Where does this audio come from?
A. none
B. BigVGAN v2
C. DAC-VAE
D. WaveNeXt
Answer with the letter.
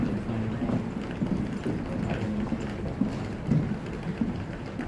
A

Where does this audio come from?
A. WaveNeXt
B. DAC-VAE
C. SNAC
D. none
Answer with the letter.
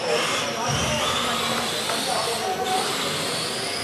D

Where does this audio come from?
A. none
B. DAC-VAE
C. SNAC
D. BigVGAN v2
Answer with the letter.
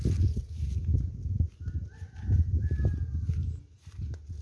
A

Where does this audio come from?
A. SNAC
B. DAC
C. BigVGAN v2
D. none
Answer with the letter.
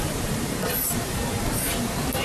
D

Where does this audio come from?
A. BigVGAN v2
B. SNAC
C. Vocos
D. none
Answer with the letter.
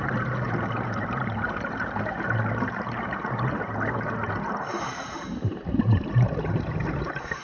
A